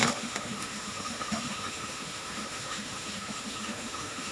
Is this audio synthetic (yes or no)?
yes